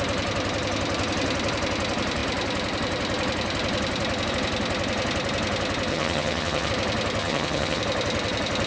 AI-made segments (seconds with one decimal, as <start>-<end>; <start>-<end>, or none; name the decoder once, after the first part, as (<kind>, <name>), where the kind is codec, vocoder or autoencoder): 5.9-6.7 (vocoder, HiFi-GAN); 7.2-7.8